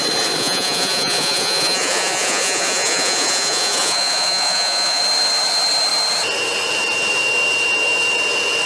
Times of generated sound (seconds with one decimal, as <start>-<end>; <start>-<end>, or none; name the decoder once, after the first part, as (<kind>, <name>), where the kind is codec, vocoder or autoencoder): 0.4-5.0 (vocoder, Vocos)